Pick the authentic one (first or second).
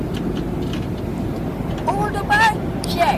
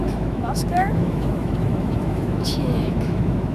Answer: first